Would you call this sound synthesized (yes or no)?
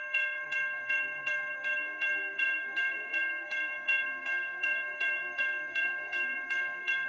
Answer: yes